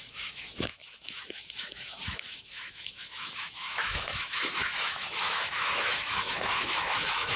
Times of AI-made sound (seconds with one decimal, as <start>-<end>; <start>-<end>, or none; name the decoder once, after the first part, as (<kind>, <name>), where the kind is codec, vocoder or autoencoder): 0.0-7.4 (autoencoder, DAC-VAE)